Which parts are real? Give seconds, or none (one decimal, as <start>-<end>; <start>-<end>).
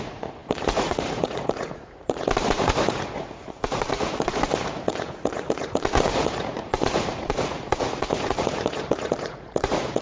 none